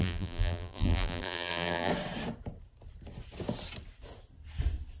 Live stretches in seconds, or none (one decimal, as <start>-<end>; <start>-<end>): 1.9-5.0